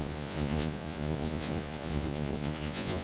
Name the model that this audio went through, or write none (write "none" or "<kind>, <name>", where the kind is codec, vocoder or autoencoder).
vocoder, Vocos